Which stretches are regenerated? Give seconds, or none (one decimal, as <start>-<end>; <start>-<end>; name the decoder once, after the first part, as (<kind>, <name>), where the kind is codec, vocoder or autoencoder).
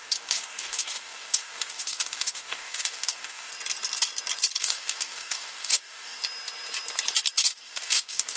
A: 0.0-3.5 (codec, DAC); 4.6-6.2; 7.4-8.4